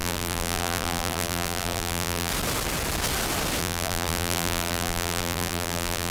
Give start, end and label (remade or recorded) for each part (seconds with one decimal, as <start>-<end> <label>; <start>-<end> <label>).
0.0-2.3 remade; 2.3-3.6 recorded; 3.6-6.1 remade